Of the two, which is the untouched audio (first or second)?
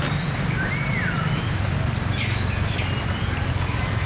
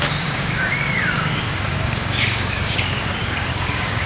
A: first